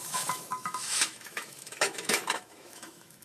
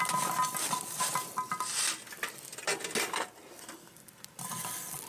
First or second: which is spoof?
first